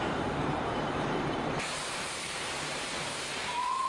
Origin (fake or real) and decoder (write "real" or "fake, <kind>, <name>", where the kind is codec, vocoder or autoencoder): fake, vocoder, BigVGAN v2